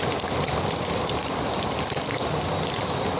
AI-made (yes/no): no